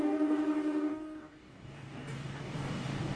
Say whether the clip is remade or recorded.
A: remade